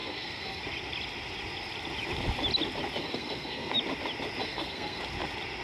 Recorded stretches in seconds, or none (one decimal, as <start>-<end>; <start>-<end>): 0.6-3.0; 3.7-4.4; 5.0-5.6